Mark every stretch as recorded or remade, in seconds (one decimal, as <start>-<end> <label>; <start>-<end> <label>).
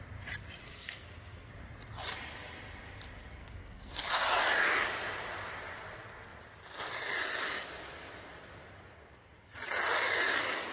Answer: 0.0-0.6 recorded; 0.6-1.5 remade; 1.5-3.4 recorded; 3.4-4.2 remade; 4.2-10.7 recorded